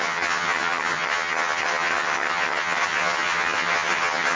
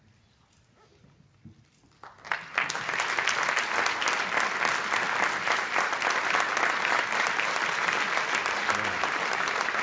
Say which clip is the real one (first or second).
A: second